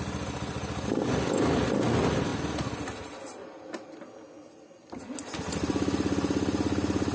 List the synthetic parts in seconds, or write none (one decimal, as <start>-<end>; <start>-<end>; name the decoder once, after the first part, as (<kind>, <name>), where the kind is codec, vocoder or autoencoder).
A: none